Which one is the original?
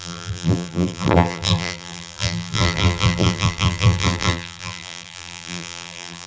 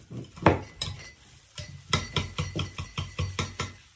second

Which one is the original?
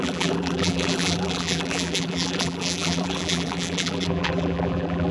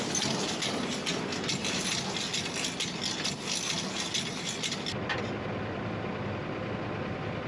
second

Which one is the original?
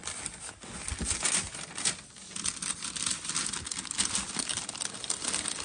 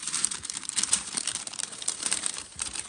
first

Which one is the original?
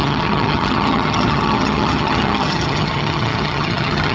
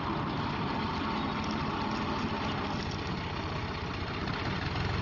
second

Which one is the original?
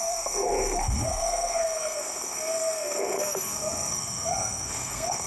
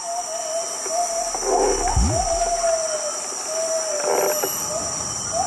second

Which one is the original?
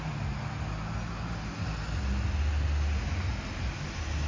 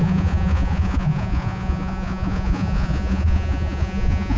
first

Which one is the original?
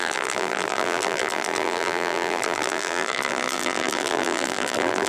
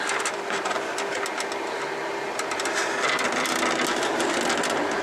second